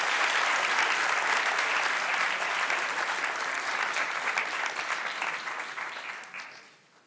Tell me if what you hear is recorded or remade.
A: recorded